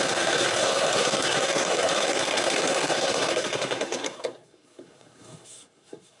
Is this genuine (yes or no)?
no